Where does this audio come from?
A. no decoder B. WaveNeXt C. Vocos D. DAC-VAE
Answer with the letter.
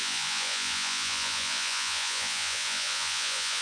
C